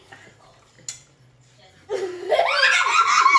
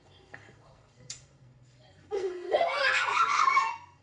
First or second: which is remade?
second